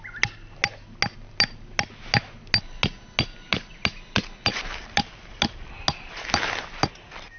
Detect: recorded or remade recorded